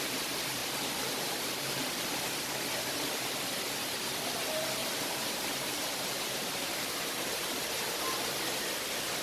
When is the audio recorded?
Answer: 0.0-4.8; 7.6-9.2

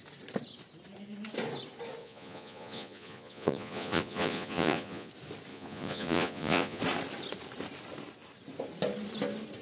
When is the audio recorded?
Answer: 0.0-2.0; 5.1-5.5; 6.8-9.6

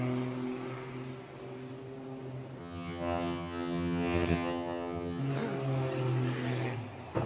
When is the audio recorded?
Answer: 0.0-2.6; 5.2-7.3

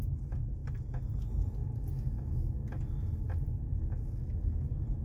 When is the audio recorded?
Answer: 0.0-5.0